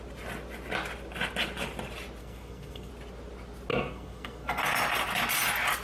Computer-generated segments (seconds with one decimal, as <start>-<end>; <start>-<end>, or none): 2.2-2.9; 3.7-4.6